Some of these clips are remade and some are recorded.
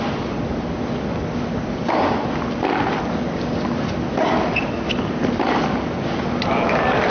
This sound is recorded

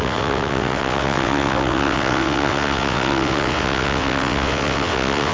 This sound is remade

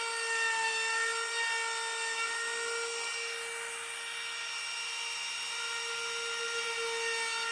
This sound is recorded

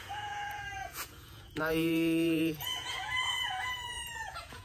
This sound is remade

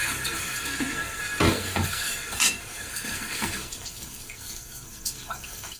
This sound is remade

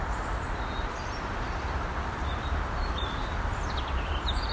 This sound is remade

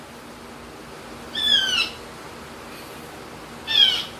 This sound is recorded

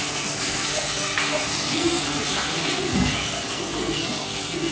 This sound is remade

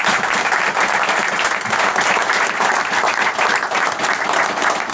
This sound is recorded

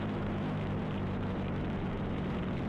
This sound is remade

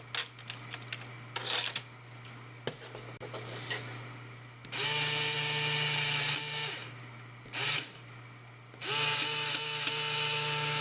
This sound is recorded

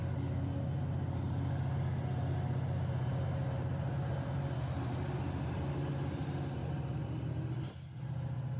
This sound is recorded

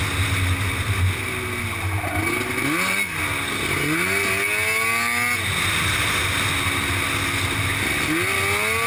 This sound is recorded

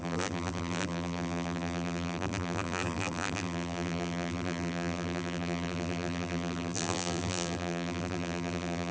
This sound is remade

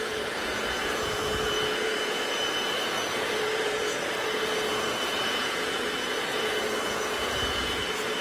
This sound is remade